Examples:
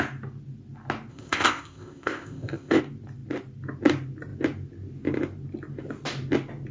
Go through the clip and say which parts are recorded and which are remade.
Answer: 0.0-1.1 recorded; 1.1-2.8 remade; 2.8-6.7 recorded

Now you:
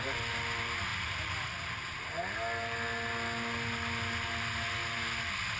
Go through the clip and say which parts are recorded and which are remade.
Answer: 0.0-5.6 recorded

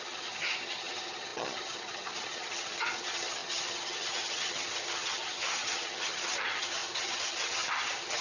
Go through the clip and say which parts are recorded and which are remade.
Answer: 0.0-8.2 remade

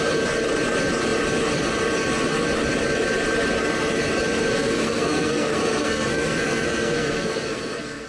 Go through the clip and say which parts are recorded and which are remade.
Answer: 0.0-4.5 recorded; 4.5-8.1 remade

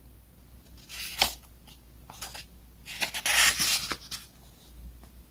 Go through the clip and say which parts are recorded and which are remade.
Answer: 0.0-5.3 recorded

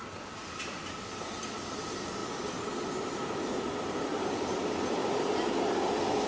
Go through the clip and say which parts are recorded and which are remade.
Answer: 0.0-2.2 remade; 2.2-3.3 recorded; 3.3-6.3 remade

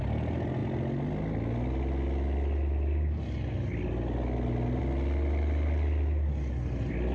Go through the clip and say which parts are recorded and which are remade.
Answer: 0.0-7.1 recorded

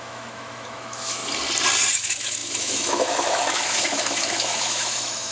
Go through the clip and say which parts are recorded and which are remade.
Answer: 0.0-1.2 remade; 1.2-1.9 recorded; 1.9-5.3 remade